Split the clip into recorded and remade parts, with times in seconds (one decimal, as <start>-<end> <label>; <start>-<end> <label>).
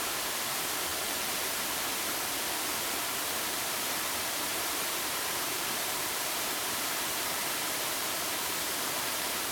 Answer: 0.0-9.5 remade